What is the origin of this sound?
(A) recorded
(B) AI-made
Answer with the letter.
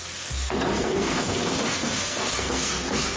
B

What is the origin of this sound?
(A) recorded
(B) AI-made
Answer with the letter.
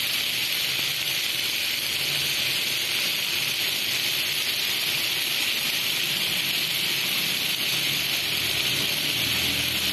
A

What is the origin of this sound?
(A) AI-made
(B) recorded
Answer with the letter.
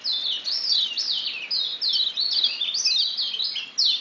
B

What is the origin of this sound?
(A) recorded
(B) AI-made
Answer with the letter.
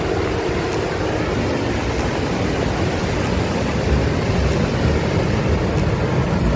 A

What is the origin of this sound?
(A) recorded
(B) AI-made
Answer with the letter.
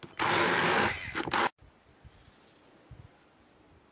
A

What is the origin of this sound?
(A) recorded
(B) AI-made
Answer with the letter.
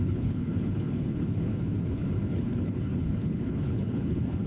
B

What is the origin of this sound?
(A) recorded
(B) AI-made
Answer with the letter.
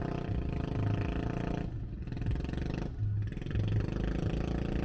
A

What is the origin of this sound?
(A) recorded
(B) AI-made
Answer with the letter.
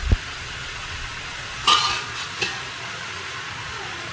B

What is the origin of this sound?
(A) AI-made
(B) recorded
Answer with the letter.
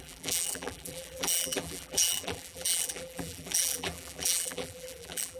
A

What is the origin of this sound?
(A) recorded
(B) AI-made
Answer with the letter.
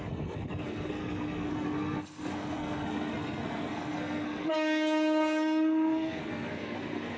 B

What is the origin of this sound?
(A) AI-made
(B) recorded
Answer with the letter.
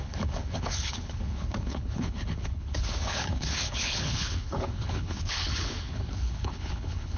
A